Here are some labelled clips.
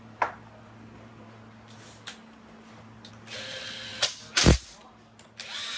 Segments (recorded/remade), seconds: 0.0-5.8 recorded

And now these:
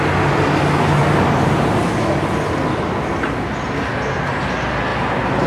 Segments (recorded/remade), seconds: 0.0-5.5 recorded

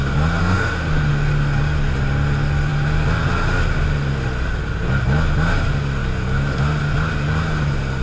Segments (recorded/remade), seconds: 0.0-0.4 recorded; 0.4-1.1 remade; 1.1-8.0 recorded

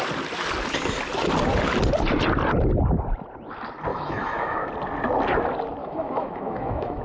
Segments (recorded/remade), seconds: 0.0-3.9 recorded; 3.9-4.7 remade; 4.7-5.8 recorded; 5.8-7.0 remade

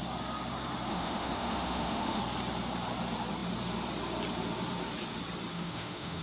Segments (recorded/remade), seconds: 0.0-0.9 recorded; 0.9-2.2 remade; 2.2-5.5 recorded; 5.5-6.2 remade

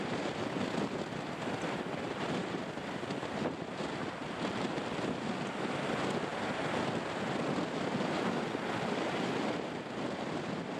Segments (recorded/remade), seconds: 0.0-10.8 recorded

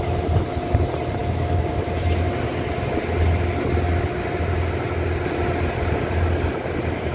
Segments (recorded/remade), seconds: 0.0-1.2 recorded; 1.2-2.3 remade; 2.3-7.1 recorded